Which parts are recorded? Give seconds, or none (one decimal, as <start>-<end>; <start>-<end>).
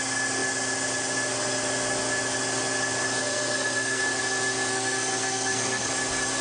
0.0-3.2; 4.0-4.7; 5.9-6.4